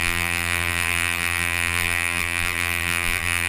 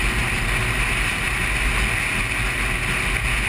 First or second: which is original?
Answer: second